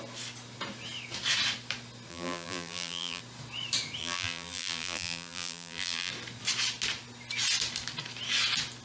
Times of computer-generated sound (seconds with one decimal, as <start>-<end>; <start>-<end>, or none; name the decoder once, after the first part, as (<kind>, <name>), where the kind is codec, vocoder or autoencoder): 2.1-3.2 (vocoder, BigVGAN v2); 4.0-6.1